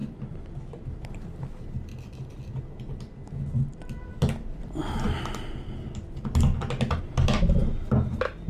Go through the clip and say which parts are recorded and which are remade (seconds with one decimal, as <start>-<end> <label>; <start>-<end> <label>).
0.0-8.5 recorded